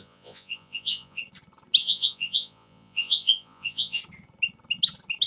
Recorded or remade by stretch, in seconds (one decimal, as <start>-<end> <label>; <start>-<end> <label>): 0.0-1.2 remade; 1.2-1.8 recorded; 1.8-4.0 remade; 4.0-5.3 recorded